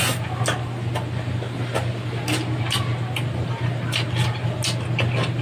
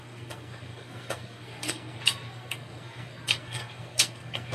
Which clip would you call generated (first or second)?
second